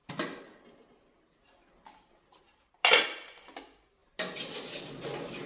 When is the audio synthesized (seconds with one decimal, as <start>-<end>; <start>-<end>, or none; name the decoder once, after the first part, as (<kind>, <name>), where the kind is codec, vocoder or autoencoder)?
none